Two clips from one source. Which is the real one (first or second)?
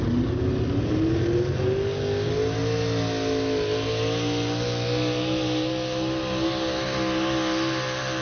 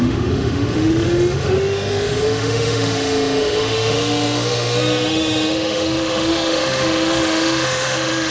first